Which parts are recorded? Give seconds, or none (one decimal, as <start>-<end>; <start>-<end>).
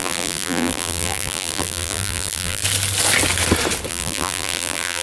2.6-3.9